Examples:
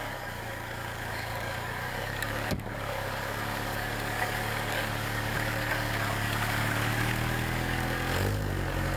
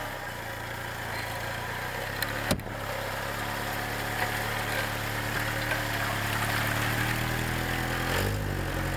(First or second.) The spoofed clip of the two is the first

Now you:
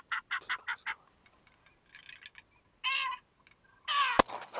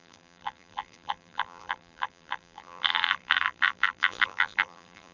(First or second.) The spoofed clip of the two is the second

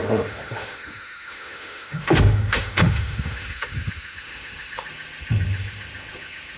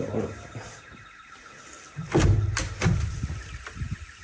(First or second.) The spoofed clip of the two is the first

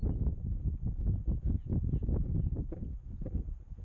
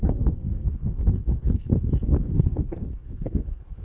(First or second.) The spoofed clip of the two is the second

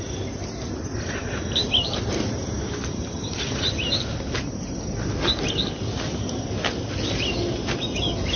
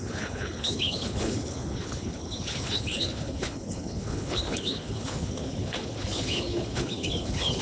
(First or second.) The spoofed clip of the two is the second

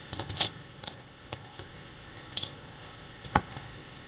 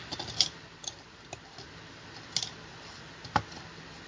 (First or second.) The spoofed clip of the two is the first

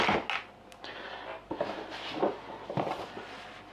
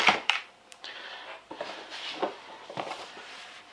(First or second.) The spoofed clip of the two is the second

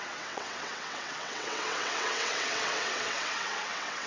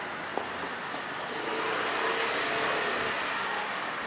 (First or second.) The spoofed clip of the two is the first